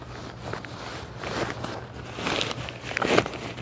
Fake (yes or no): no